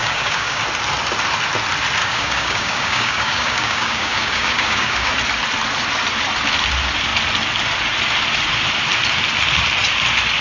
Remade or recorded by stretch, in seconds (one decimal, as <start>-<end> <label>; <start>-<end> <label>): 0.0-0.6 remade; 0.6-2.0 recorded; 2.0-5.1 remade; 5.1-10.4 recorded